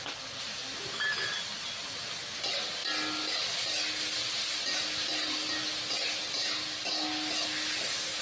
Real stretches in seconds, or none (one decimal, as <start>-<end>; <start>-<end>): 0.0-8.2